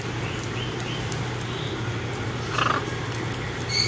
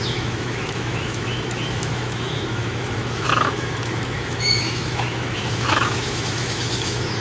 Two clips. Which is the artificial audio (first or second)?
second